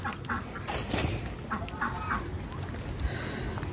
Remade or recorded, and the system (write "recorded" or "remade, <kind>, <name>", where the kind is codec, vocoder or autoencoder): recorded